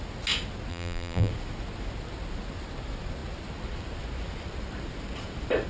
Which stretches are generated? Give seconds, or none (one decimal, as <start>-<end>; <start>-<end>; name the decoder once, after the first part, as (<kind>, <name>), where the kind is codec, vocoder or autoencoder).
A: 0.7-1.3 (vocoder, BigVGAN v2)